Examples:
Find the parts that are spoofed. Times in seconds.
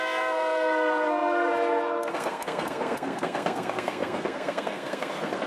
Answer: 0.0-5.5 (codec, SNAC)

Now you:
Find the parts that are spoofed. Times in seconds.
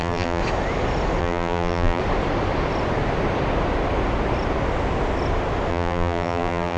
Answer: 0.0-0.4 (vocoder, BigVGAN v2); 1.2-2.0; 5.7-6.8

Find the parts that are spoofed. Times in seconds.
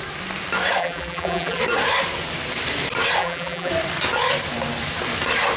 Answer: 0.8-1.6 (vocoder, BigVGAN v2); 3.2-3.7